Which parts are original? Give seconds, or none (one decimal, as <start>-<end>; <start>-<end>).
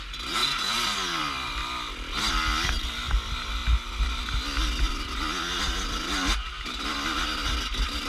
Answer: 0.0-0.4; 1.2-1.6; 2.3-8.1